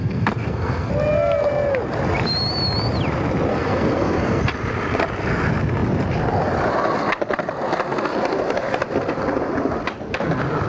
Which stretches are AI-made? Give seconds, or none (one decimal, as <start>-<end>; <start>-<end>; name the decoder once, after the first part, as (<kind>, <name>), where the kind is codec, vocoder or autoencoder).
0.0-0.9 (codec, SNAC); 3.5-4.4